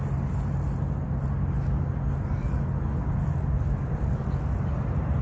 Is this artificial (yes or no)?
no